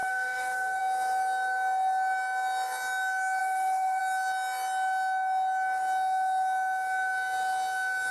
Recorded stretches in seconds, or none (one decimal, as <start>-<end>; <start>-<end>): 0.8-3.4; 4.0-8.1